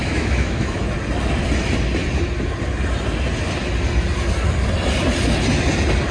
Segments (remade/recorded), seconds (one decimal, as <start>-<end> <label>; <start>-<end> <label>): 0.0-0.8 remade; 0.8-6.1 recorded